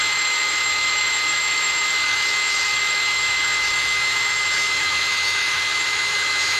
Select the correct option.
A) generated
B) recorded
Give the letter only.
A